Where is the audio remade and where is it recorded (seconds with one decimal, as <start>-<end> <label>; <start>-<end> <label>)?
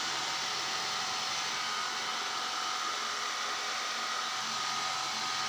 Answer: 0.0-2.1 recorded; 2.1-3.8 remade; 3.8-5.5 recorded